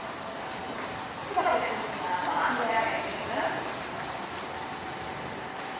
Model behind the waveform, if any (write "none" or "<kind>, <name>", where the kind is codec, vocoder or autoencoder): none